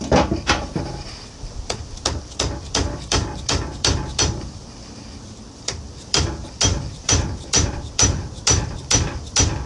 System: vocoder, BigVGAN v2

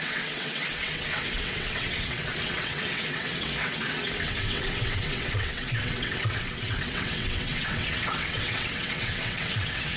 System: vocoder, WaveNeXt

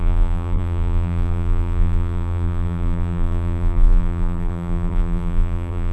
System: vocoder, BigVGAN v2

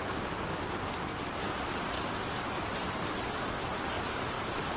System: none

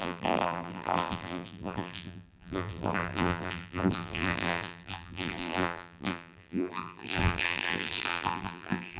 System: vocoder, BigVGAN v2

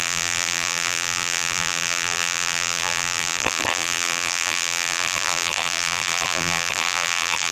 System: vocoder, BigVGAN v2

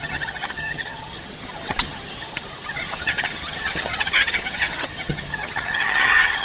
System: vocoder, HiFi-GAN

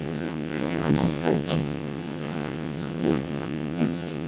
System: vocoder, WaveNeXt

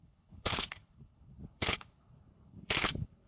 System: codec, HILCodec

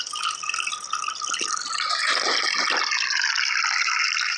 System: none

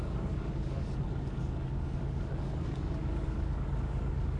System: codec, DAC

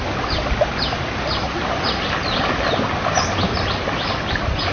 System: none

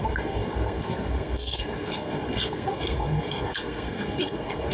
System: codec, SNAC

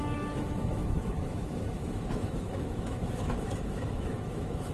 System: autoencoder, DAC-VAE